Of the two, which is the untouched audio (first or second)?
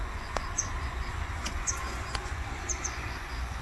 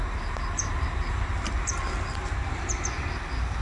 second